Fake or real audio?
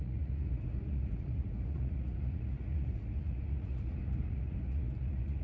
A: fake